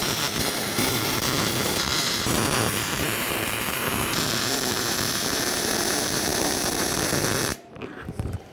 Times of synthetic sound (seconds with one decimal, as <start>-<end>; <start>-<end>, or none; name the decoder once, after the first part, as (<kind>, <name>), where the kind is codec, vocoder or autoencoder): 0.0-8.5 (vocoder, BigVGAN v2)